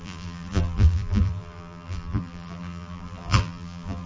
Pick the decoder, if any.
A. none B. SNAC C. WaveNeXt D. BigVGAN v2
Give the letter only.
D